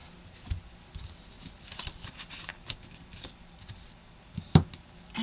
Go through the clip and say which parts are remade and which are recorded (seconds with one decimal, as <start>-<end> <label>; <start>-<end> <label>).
0.0-2.5 recorded; 2.5-4.5 remade; 4.5-5.2 recorded